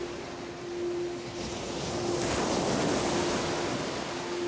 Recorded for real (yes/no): yes